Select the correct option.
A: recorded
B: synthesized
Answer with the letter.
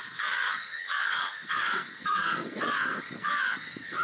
B